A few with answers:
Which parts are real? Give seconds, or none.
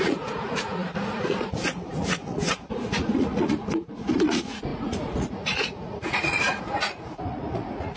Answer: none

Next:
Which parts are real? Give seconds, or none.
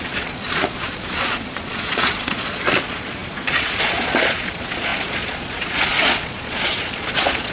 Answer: none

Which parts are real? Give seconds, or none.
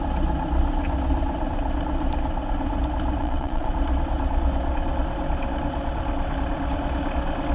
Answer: 0.0-3.2; 3.7-7.5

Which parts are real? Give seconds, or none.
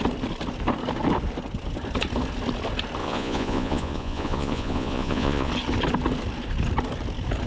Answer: 0.0-3.0; 5.5-7.5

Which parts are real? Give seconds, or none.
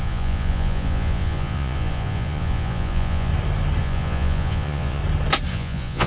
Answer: 3.3-3.8; 5.0-5.5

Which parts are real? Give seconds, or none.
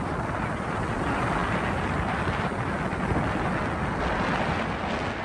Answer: 0.0-5.2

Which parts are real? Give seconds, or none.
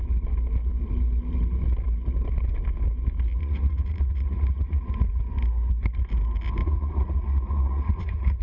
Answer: 0.0-3.4; 5.2-6.6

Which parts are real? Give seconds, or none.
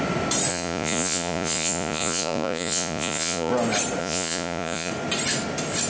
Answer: 0.0-0.5; 3.5-4.0; 4.9-5.9